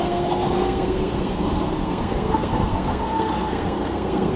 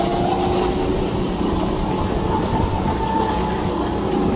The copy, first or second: first